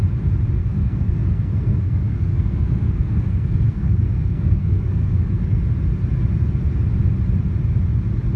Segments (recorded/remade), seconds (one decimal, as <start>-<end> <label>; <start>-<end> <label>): 0.0-0.6 recorded; 0.6-5.6 remade; 5.6-8.4 recorded